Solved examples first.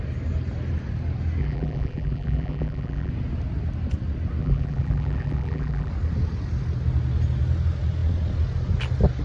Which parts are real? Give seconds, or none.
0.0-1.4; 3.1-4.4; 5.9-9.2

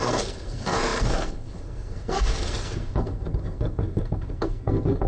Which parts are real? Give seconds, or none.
none

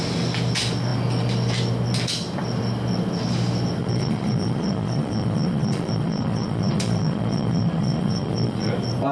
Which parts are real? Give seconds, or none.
0.0-3.8; 8.7-9.1

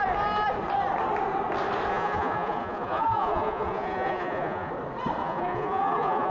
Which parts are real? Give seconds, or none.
0.0-1.9; 4.7-5.2

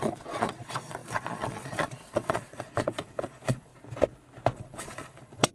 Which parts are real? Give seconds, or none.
3.7-4.5

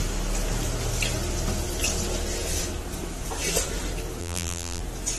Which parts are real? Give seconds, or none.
0.0-4.2; 4.8-5.2

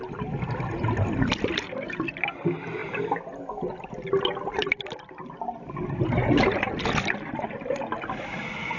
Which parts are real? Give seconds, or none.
0.0-8.8